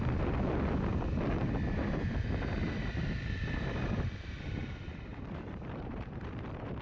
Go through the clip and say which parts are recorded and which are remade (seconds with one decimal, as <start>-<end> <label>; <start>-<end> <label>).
0.0-5.1 recorded; 5.1-6.2 remade; 6.2-6.8 recorded